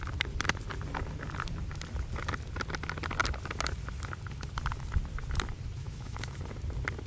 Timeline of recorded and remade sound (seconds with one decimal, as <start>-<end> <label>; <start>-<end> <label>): 0.0-5.8 recorded; 5.8-6.4 remade; 6.4-7.1 recorded